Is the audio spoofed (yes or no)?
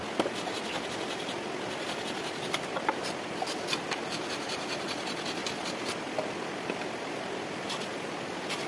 no